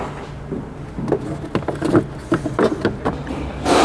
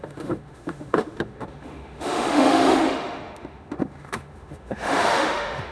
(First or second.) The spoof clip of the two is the second